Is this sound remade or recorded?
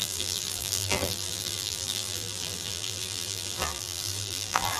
remade